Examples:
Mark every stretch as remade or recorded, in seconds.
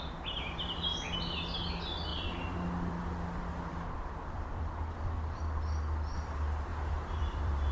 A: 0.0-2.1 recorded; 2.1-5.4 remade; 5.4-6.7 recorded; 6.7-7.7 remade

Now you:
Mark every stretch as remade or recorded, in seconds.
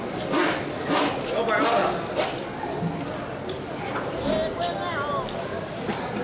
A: 0.0-6.2 recorded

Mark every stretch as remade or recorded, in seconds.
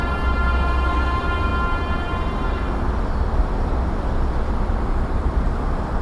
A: 0.0-6.0 recorded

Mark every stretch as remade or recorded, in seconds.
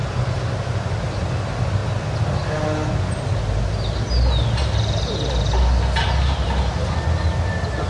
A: 0.0-1.0 remade; 1.0-7.9 recorded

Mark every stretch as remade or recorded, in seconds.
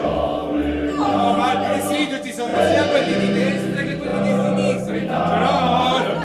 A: 0.0-0.4 remade; 0.4-1.1 recorded; 1.1-6.2 remade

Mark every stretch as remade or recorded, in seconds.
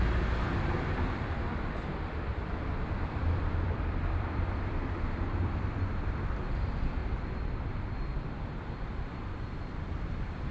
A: 0.0-7.0 remade; 7.0-9.3 recorded; 9.3-10.5 remade